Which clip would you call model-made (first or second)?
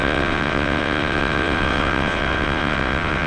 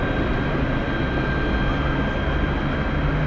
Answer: first